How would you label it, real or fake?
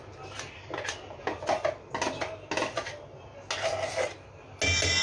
real